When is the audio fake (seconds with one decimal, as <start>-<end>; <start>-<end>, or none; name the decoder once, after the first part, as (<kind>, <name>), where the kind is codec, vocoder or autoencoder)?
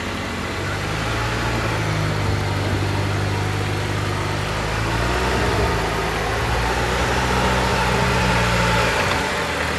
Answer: 7.7-8.3 (vocoder, Vocos)